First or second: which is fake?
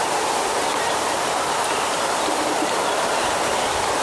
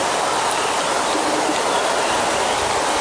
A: first